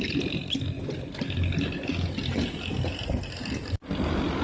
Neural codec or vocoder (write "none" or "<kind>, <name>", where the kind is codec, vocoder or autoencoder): none